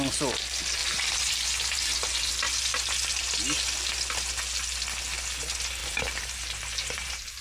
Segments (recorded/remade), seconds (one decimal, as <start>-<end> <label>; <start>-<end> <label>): 0.0-0.8 recorded; 0.8-2.3 remade; 2.3-5.8 recorded; 5.8-7.4 remade